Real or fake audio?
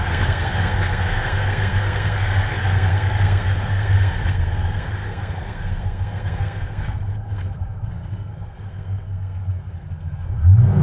fake